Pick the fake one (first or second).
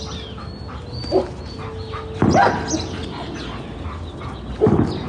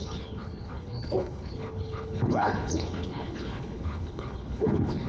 second